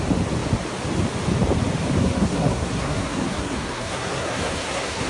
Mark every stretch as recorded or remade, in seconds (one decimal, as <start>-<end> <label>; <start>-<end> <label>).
0.0-2.0 recorded; 2.0-5.1 remade